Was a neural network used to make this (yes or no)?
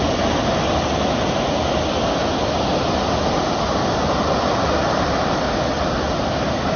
no